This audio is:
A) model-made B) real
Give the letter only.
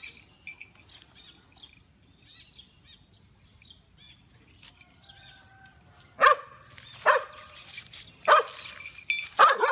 B